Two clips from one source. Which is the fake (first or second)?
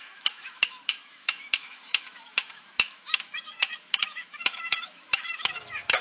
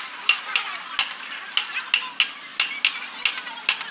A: first